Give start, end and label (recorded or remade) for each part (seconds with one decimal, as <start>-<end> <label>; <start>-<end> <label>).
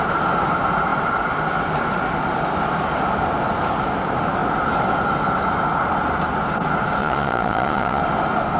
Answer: 0.0-7.0 recorded; 7.0-8.0 remade; 8.0-8.6 recorded